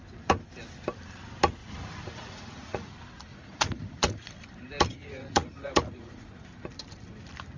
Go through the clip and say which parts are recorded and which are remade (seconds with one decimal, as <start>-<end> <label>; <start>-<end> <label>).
0.0-1.6 recorded; 1.6-2.9 remade; 2.9-3.3 recorded; 3.3-4.3 remade; 4.3-4.9 recorded; 4.9-6.3 remade; 6.3-7.6 recorded